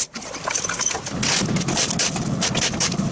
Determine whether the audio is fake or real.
real